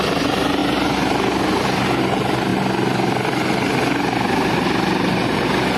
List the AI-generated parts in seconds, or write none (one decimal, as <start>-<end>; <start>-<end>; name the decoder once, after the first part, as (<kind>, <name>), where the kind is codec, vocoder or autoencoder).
none